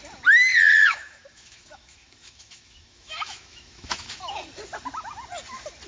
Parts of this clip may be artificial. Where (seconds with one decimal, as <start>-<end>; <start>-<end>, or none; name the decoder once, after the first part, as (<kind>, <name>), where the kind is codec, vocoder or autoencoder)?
0.8-4.3 (autoencoder, DAC-VAE)